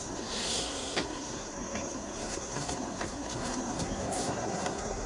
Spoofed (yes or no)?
yes